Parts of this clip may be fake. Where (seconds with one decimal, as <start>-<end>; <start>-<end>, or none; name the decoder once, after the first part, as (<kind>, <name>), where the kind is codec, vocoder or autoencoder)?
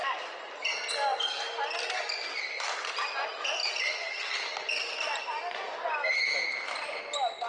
none